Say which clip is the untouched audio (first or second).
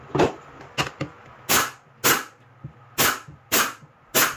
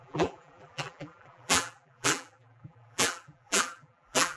first